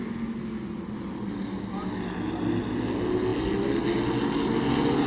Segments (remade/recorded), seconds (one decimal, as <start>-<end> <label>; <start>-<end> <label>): 0.0-3.3 recorded; 3.3-3.8 remade; 3.8-5.1 recorded